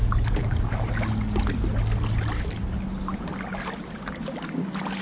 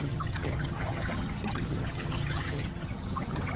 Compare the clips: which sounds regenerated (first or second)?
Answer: second